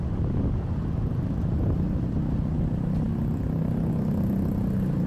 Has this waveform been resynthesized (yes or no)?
no